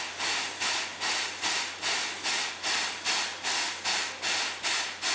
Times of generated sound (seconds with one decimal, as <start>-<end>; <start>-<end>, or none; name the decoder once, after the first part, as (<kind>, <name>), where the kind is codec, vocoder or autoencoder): none